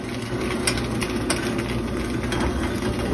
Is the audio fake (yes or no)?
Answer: no